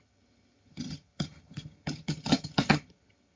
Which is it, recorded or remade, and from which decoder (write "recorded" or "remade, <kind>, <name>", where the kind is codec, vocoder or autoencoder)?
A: remade, vocoder, HiFi-GAN